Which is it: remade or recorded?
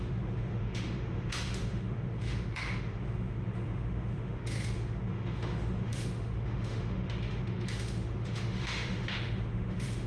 remade